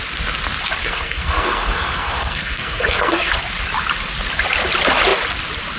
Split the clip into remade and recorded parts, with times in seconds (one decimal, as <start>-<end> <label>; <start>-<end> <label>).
0.0-0.8 recorded; 0.8-3.3 remade; 3.3-5.8 recorded